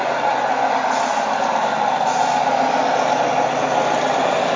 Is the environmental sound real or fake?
real